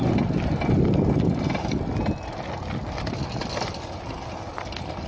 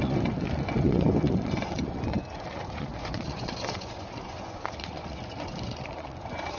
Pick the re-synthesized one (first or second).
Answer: second